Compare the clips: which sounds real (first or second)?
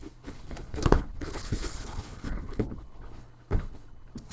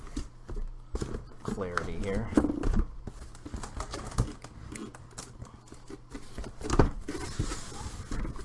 second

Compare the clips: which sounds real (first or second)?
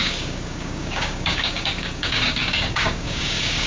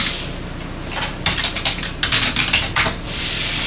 second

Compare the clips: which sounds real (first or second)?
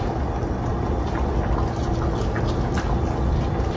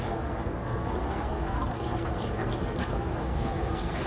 first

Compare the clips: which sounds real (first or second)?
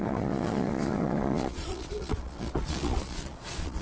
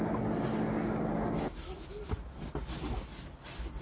second